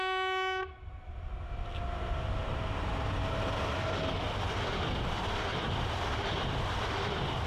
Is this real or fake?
real